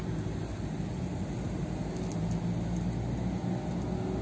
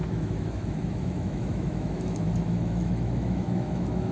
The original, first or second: first